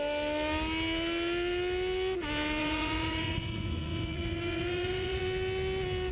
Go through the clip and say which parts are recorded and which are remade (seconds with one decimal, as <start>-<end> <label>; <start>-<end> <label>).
0.0-2.6 recorded; 2.6-5.2 remade; 5.2-6.1 recorded